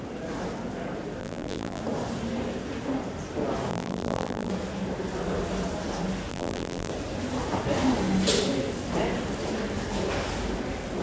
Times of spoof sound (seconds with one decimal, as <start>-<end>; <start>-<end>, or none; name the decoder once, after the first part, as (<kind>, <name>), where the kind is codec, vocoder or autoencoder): 1.2-1.8 (vocoder, BigVGAN v2); 3.7-4.5; 6.3-6.9